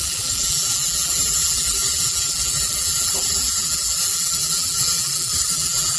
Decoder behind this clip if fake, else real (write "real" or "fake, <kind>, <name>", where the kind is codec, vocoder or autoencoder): fake, vocoder, BigVGAN v2